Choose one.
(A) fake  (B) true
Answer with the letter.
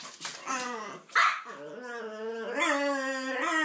B